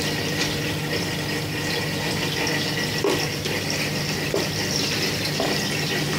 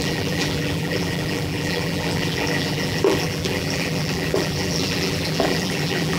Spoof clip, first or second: second